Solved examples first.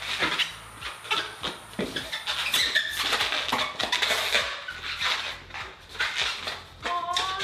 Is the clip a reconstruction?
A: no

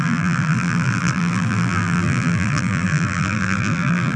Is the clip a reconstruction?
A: yes